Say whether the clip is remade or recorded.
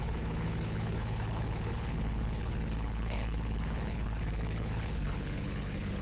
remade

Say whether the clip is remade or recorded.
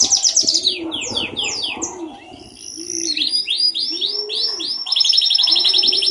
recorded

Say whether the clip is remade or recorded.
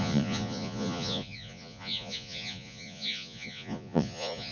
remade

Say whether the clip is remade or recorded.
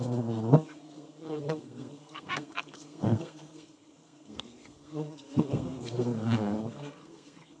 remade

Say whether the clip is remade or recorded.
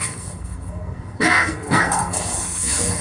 remade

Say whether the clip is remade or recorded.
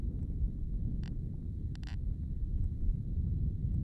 recorded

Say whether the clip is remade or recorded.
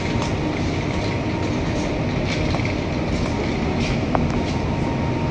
recorded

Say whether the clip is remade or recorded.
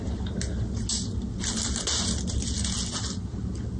recorded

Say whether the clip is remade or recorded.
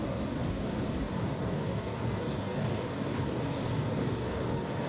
remade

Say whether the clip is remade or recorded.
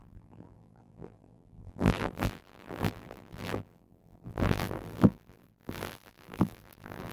remade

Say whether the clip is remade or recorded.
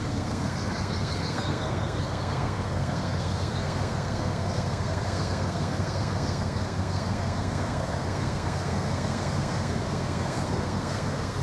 remade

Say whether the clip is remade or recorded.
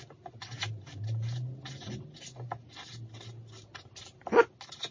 recorded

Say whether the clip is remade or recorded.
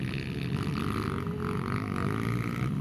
recorded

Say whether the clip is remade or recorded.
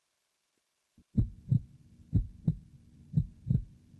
remade